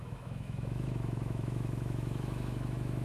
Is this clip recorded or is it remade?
remade